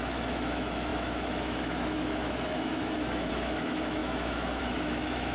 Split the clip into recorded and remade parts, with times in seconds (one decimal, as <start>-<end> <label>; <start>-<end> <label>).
0.0-5.3 remade